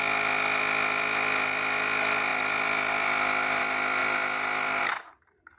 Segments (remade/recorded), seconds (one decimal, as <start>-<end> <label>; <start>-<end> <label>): 0.0-5.6 recorded